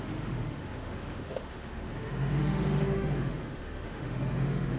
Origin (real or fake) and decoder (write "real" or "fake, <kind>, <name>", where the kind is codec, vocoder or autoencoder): fake, autoencoder, DAC-VAE